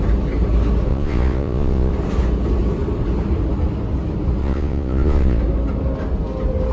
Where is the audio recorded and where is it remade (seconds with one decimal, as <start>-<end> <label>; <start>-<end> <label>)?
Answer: 0.0-0.9 recorded; 0.9-1.9 remade; 1.9-4.4 recorded; 4.4-5.4 remade; 5.4-6.7 recorded